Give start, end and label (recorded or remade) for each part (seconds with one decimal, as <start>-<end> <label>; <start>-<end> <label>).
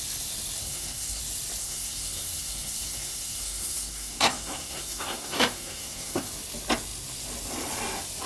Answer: 0.0-0.6 recorded; 0.6-1.2 remade; 1.2-1.6 recorded; 1.6-6.3 remade; 6.3-8.3 recorded